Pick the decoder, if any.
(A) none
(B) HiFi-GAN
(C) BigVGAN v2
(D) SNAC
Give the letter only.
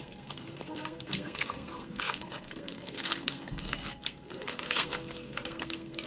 D